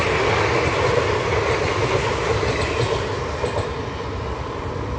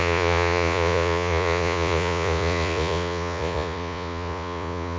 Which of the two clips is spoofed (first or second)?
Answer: second